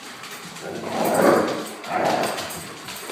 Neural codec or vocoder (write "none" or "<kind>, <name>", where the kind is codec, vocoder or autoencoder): vocoder, BigVGAN v2